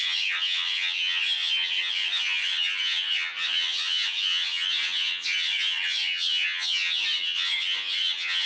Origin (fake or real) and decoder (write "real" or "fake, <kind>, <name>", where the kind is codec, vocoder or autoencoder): fake, vocoder, HiFi-GAN